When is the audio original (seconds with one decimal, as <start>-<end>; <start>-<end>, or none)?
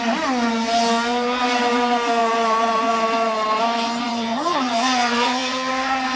0.0-4.1; 5.7-6.2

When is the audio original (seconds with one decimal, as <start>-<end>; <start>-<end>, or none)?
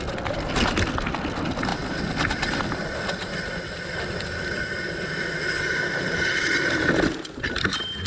0.0-8.1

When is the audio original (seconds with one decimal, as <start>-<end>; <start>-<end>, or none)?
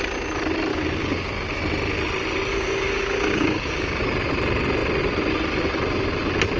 0.0-0.7; 1.6-2.5; 4.0-6.6